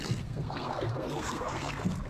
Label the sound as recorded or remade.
remade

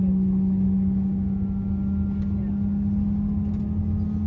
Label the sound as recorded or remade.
recorded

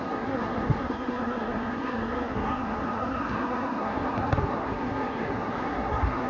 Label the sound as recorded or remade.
remade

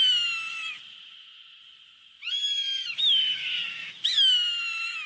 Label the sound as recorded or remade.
recorded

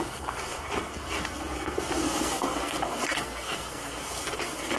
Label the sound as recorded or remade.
remade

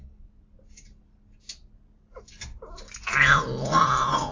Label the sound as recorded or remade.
recorded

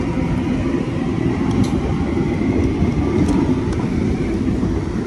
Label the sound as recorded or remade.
recorded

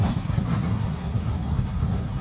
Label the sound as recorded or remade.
remade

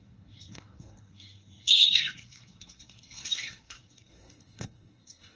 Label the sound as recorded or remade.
remade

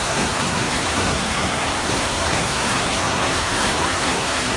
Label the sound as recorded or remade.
remade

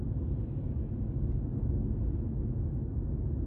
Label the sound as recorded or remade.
recorded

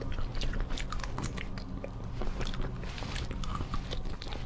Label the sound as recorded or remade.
recorded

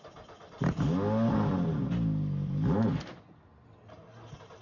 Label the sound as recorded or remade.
recorded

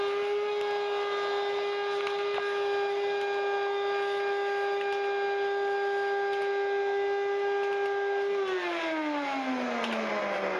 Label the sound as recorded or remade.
recorded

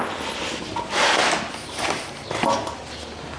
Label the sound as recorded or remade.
recorded